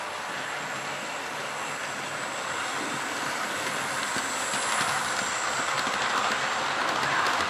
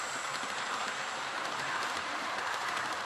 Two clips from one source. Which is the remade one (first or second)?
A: second